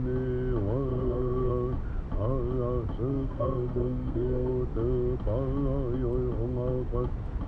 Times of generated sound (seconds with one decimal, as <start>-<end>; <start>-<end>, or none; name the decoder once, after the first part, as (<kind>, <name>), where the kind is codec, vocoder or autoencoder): 0.9-1.5 (codec, SNAC); 3.1-4.5